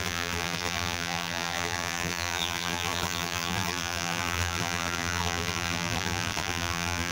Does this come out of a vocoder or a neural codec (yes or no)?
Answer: yes